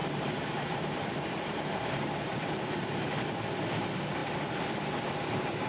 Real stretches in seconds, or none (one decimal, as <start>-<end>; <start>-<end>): 2.0-5.7